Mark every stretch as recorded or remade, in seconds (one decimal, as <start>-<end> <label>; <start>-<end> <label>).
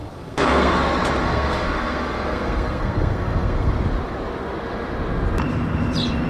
0.0-0.7 remade; 0.7-1.2 recorded; 1.2-3.7 remade; 3.7-6.3 recorded